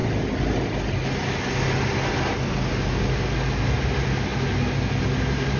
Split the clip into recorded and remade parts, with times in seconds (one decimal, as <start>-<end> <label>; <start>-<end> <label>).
0.0-5.6 recorded